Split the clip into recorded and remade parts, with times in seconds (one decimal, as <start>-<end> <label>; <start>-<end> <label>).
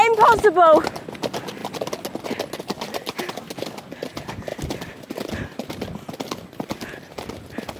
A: 0.0-7.8 recorded